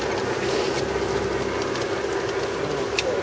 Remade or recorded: recorded